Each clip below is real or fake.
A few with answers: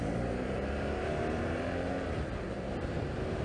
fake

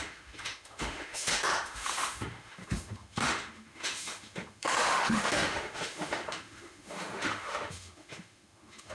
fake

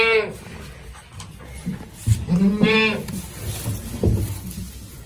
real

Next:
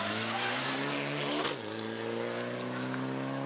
real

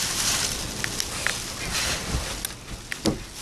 real